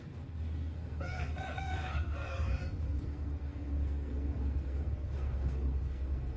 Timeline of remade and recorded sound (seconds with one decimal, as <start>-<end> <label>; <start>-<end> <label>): 0.0-6.4 remade